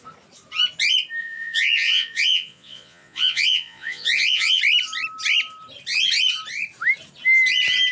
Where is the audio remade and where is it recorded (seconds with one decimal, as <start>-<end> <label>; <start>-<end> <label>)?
0.0-1.2 recorded; 1.2-4.6 remade; 4.6-7.9 recorded

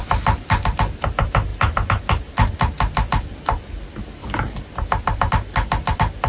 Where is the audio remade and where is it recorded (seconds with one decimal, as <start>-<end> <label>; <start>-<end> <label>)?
0.0-6.3 recorded

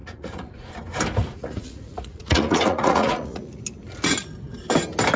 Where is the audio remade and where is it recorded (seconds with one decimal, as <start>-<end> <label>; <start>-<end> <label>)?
0.0-0.7 remade; 0.7-1.2 recorded; 1.2-3.6 remade; 3.6-5.2 recorded

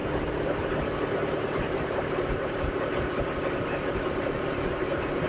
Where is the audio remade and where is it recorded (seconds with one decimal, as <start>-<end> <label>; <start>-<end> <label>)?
0.0-5.3 recorded

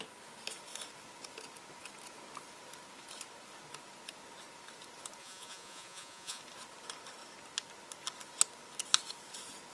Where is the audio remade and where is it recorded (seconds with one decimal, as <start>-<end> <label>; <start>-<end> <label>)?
0.0-5.2 recorded; 5.2-6.4 remade; 6.4-9.7 recorded

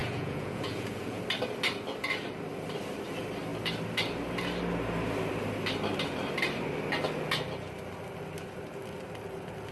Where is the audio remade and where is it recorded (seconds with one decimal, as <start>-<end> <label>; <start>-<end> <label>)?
0.0-1.2 remade; 1.2-9.7 recorded

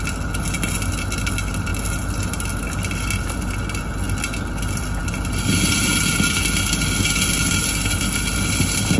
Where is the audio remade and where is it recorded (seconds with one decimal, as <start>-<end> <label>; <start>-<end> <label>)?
0.0-9.0 recorded

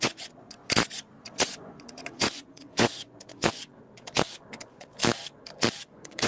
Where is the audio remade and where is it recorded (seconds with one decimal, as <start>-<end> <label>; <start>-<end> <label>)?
0.0-0.6 remade; 0.6-1.2 recorded; 1.2-5.0 remade; 5.0-5.8 recorded; 5.8-6.3 remade